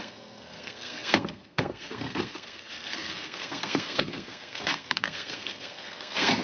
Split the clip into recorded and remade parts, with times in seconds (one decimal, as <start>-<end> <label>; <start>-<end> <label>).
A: 0.0-6.4 remade